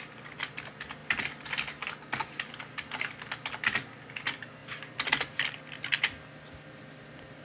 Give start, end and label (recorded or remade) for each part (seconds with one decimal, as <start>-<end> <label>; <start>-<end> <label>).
0.0-7.4 recorded